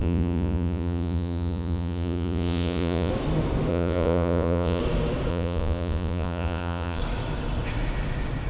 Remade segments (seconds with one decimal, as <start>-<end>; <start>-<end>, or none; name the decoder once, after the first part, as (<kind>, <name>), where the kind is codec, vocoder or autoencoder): 0.0-3.1 (vocoder, Vocos); 3.7-4.8; 5.3-7.0